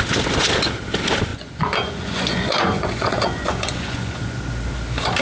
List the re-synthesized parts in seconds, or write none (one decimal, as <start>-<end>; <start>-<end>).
1.3-4.4